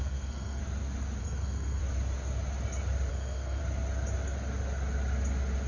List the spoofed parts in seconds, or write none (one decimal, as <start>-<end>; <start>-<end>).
0.0-0.6; 1.2-1.8; 3.1-3.6